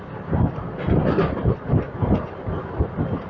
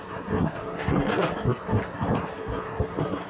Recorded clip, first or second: first